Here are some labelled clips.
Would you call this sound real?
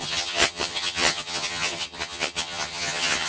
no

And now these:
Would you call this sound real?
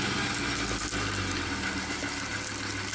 yes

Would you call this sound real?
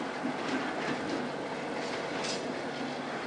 yes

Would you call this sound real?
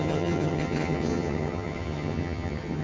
no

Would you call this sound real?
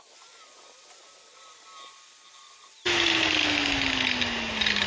yes